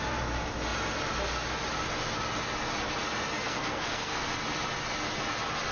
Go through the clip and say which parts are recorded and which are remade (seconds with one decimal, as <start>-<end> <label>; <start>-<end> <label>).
0.0-3.3 recorded; 3.3-4.3 remade; 4.3-5.7 recorded

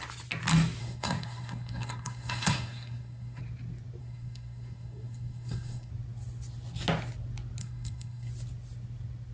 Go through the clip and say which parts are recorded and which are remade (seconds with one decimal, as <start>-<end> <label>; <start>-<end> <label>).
0.0-0.8 recorded; 0.8-3.4 remade; 3.4-4.0 recorded; 4.0-5.9 remade; 5.9-7.6 recorded; 7.6-8.3 remade; 8.3-9.3 recorded